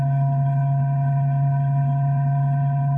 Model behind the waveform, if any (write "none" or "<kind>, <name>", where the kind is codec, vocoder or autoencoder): codec, HILCodec